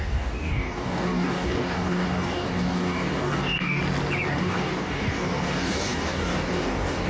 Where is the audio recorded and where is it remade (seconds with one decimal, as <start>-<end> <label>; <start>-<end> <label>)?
0.0-3.8 remade; 3.8-4.3 recorded; 4.3-7.1 remade